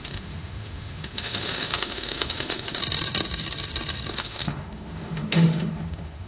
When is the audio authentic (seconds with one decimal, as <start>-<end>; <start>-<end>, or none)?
2.8-4.1